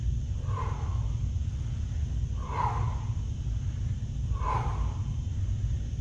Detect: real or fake real